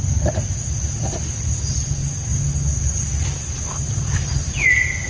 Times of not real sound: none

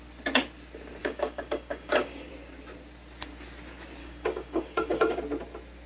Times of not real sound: 1.0-2.3 (codec, DAC); 4.0-5.2

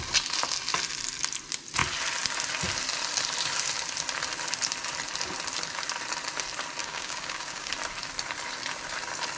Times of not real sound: 6.8-7.7 (codec, DAC)

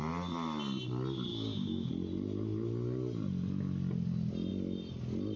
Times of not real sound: 1.3-1.9 (codec, DAC)

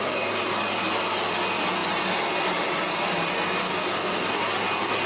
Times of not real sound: 3.6-4.4 (codec, DAC)

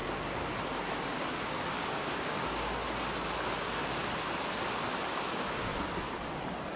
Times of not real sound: 1.1-2.8 (codec, DAC); 5.2-5.7

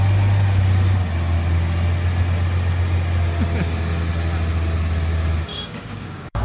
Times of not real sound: 5.5-6.4 (codec, DAC)